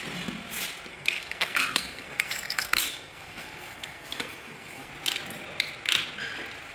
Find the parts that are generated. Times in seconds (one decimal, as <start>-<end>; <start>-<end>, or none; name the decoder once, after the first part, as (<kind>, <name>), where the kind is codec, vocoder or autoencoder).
0.9-4.9 (codec, SNAC)